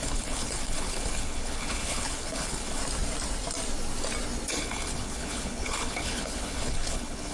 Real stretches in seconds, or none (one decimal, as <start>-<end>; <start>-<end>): 2.8-4.5